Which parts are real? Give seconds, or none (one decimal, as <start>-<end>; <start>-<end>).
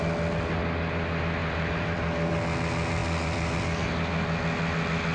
0.0-1.4; 2.3-3.0; 3.6-5.1